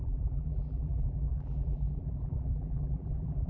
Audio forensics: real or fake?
fake